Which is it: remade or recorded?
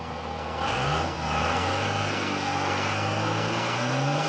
remade